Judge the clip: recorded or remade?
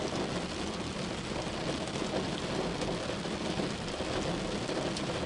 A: recorded